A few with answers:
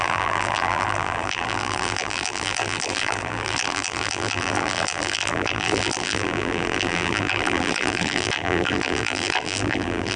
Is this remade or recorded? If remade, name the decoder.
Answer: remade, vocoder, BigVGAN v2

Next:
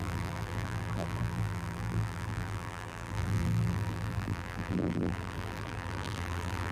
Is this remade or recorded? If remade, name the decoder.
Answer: remade, vocoder, BigVGAN v2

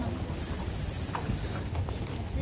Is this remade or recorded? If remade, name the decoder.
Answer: recorded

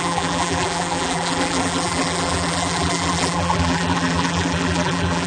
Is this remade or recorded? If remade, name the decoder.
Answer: remade, vocoder, BigVGAN v2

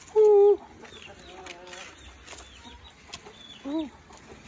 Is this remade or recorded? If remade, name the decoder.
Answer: recorded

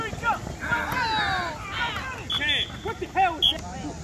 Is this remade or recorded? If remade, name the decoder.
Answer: recorded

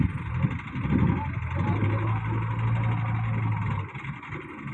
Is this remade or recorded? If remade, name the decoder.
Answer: recorded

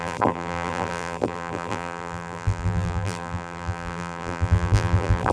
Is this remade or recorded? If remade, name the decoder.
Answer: remade, vocoder, BigVGAN v2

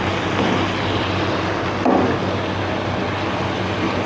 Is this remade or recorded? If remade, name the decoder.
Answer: recorded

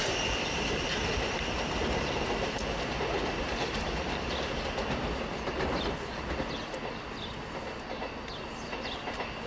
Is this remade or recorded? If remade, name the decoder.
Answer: recorded